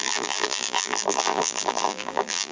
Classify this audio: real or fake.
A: fake